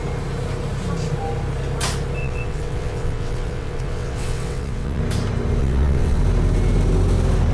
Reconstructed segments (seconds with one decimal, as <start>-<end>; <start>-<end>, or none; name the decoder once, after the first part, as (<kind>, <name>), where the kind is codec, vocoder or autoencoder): 2.2-5.0 (vocoder, WaveNeXt); 5.6-6.2